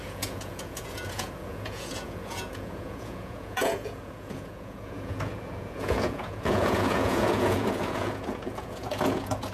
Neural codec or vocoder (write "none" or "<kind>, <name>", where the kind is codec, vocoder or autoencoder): vocoder, Vocos